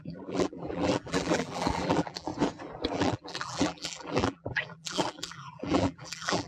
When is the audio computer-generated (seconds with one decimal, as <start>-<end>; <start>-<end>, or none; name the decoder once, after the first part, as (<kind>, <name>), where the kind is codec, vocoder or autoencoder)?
0.0-2.3 (vocoder, BigVGAN v2); 2.9-6.5